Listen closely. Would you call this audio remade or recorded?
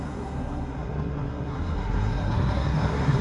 remade